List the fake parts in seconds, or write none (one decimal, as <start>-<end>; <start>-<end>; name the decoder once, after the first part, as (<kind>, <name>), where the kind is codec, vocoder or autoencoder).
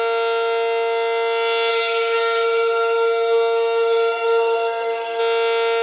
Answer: 1.7-5.2 (codec, SNAC)